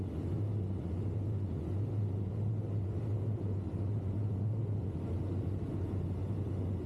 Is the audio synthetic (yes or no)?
no